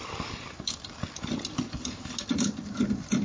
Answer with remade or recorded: recorded